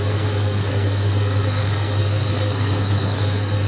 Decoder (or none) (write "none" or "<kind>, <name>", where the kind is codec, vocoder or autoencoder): codec, SNAC